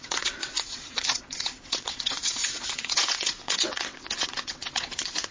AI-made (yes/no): yes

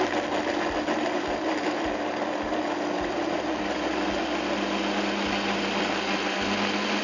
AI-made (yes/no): no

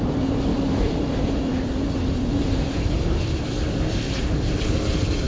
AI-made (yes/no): no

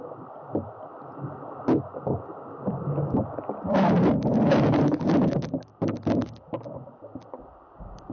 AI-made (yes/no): no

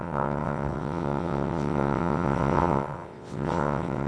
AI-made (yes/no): yes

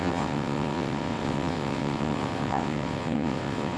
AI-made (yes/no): yes